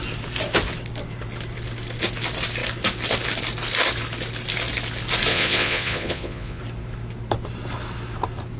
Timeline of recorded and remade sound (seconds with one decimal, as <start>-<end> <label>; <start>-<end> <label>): 0.0-5.3 recorded; 5.3-6.6 remade; 6.6-8.6 recorded